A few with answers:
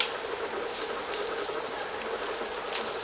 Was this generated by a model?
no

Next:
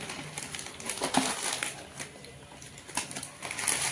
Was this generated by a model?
no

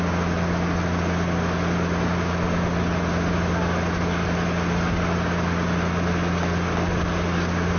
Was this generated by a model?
no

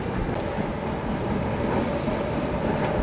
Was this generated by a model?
no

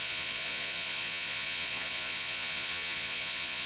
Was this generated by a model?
yes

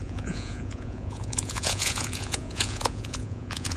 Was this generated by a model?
yes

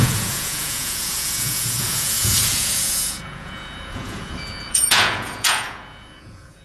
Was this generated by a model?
yes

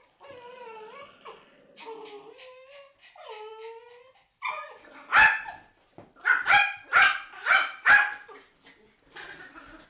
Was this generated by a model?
no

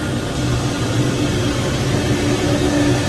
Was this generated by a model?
no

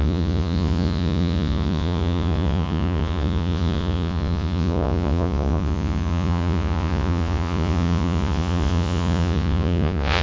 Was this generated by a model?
yes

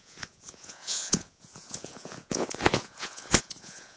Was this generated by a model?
yes